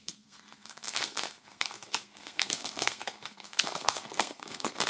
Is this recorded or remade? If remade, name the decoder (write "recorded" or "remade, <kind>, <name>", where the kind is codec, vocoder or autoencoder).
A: remade, codec, SNAC